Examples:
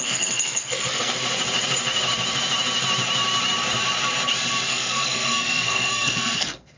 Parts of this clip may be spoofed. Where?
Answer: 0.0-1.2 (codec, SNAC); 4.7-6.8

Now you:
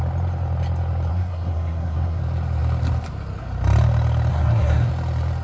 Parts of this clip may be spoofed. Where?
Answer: 1.1-2.2 (codec, SNAC); 4.3-4.9

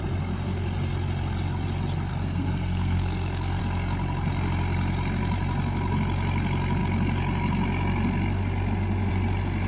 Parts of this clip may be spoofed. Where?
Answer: 2.1-3.6 (codec, SNAC)

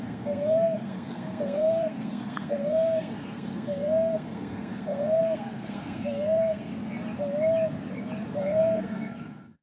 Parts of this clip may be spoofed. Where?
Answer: 0.0-6.7 (codec, SNAC); 8.4-9.6